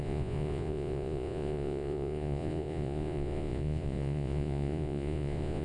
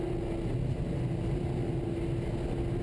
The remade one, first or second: first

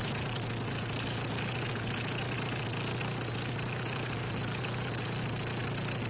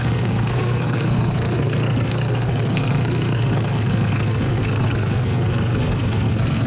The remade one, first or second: second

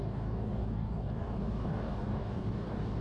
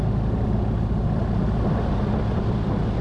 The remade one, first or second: first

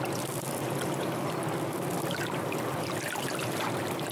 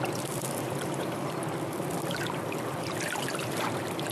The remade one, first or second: second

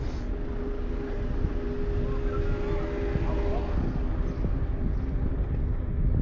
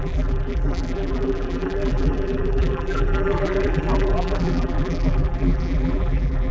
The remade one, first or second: second